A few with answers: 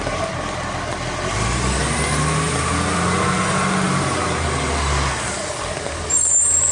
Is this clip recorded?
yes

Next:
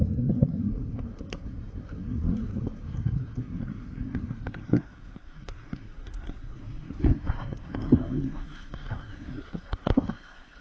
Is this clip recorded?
no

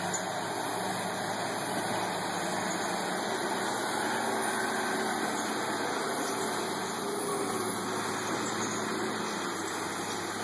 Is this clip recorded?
yes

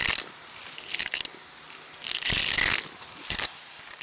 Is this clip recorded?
yes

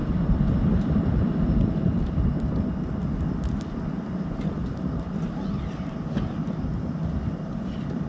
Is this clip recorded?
yes